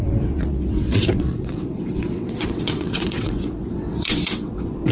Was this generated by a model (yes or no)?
yes